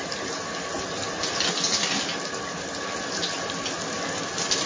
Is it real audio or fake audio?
real